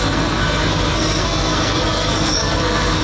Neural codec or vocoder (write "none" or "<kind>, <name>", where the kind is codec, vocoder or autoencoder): codec, SNAC